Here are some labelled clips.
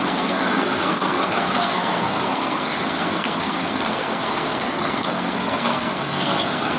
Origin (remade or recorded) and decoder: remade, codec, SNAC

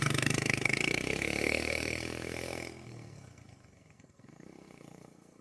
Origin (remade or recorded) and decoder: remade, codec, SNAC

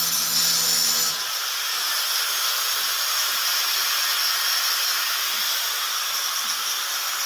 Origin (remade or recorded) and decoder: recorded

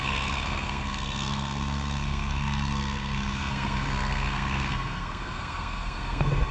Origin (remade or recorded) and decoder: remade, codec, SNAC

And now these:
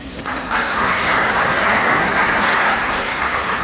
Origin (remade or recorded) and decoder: remade, codec, SNAC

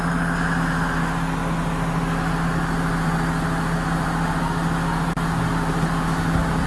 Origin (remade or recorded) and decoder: recorded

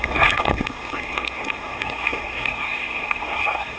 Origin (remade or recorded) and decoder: remade, codec, SNAC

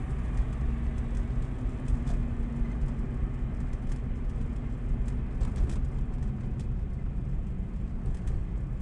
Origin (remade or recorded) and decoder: recorded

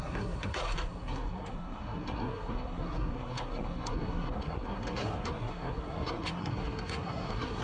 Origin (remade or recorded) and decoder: remade, codec, SNAC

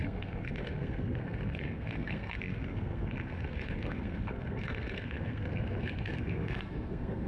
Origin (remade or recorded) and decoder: remade, codec, SNAC